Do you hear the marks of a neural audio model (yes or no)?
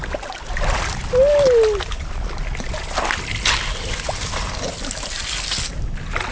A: no